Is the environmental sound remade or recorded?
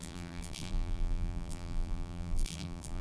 remade